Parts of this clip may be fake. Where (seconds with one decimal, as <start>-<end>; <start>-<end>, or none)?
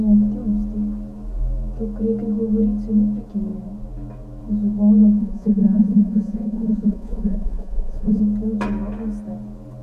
5.2-8.2